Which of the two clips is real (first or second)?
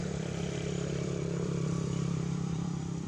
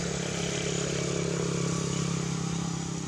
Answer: second